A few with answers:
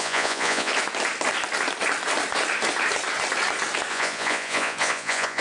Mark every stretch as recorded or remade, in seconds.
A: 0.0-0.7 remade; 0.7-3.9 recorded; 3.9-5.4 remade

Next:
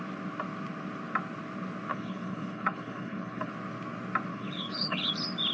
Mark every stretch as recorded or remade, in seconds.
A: 0.0-1.9 recorded; 1.9-3.5 remade; 3.5-4.3 recorded; 4.3-5.1 remade; 5.1-5.5 recorded

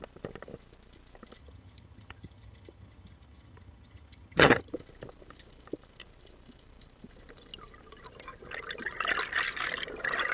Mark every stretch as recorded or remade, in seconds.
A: 0.0-1.4 recorded; 1.4-4.7 remade; 4.7-10.3 recorded

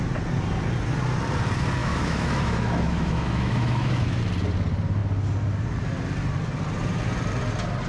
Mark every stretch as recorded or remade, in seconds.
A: 0.0-1.8 recorded; 1.8-4.2 remade; 4.2-7.9 recorded